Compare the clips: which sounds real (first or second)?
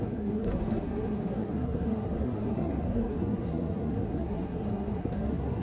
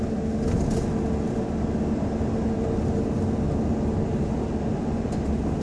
second